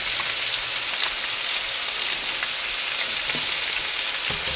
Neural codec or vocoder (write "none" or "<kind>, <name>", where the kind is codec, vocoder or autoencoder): none